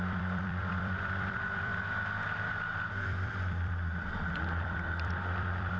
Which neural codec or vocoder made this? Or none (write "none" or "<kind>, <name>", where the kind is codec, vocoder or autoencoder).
vocoder, BigVGAN v2